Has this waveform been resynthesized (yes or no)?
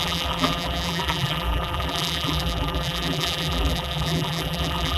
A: yes